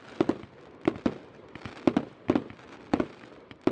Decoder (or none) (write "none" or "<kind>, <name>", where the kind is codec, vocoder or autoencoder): none